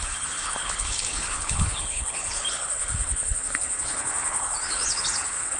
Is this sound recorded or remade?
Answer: remade